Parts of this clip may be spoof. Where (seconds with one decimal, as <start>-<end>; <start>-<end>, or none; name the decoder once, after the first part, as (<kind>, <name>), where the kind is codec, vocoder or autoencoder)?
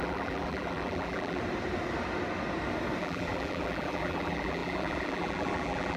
0.0-1.4 (vocoder, BigVGAN v2); 3.0-6.0